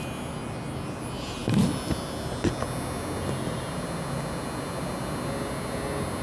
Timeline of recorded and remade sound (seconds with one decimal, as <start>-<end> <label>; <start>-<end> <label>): 0.0-6.2 recorded